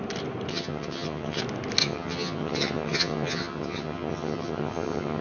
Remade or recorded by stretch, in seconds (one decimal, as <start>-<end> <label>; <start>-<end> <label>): 0.0-0.5 recorded; 0.5-1.4 remade; 1.4-1.8 recorded; 1.8-5.2 remade

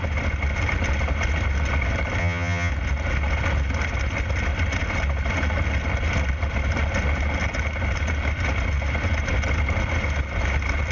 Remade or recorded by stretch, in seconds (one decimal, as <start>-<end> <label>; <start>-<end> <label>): 0.0-2.2 recorded; 2.2-2.7 remade; 2.7-10.9 recorded

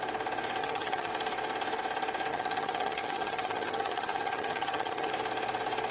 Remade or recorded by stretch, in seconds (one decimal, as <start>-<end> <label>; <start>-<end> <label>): 0.0-0.6 recorded; 0.6-1.1 remade; 1.1-2.3 recorded; 2.3-5.1 remade; 5.1-5.9 recorded